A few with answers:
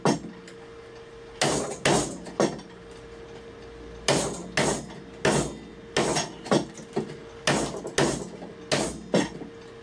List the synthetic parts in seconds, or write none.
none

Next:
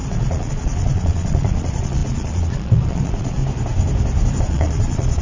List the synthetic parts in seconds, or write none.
0.0-3.4 (vocoder, Vocos); 4.4-5.2

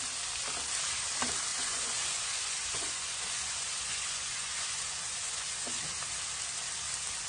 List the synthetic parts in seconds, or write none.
1.5-5.8 (vocoder, Vocos)

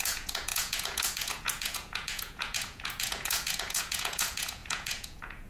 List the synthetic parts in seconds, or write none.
0.0-5.5 (vocoder, Vocos)

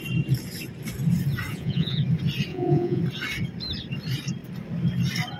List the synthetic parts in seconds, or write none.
1.5-2.0 (vocoder, Vocos); 2.5-3.0

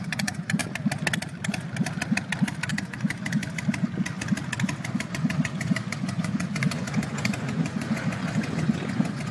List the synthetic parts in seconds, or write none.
0.0-0.6 (vocoder, Vocos); 2.7-3.4; 5.1-9.3

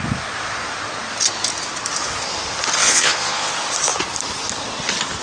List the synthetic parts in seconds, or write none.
2.8-3.5 (vocoder, Vocos)

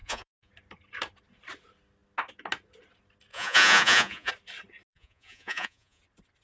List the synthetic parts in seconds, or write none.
0.0-0.5 (vocoder, Vocos); 3.3-4.3; 4.9-6.0